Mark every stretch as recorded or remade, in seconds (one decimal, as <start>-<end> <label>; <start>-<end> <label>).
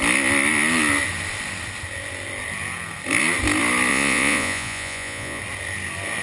0.0-3.9 recorded; 3.9-5.4 remade; 5.4-6.2 recorded